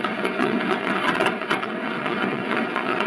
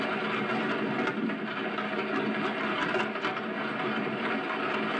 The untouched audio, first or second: second